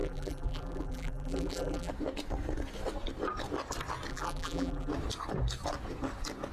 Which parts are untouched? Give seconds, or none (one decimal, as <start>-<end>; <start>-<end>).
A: 1.9-4.1; 4.9-6.5